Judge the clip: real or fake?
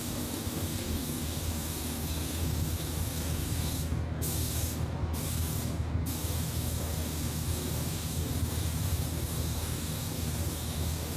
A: fake